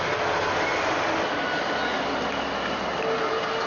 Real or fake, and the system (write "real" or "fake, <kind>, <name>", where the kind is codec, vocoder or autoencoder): real